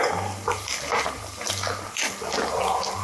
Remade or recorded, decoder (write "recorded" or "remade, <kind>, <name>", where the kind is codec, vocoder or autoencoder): recorded